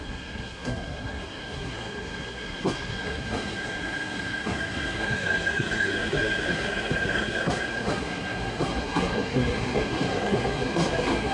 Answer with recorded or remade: remade